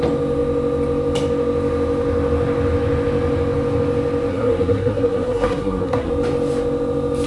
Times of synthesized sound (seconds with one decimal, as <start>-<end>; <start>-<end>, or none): 4.3-6.1